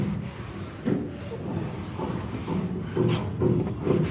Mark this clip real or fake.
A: real